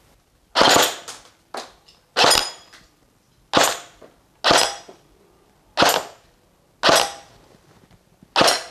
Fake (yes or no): no